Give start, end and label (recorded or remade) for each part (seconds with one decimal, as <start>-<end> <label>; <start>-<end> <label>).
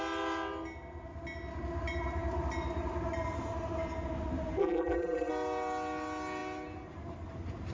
0.0-4.6 recorded; 4.6-5.3 remade; 5.3-7.7 recorded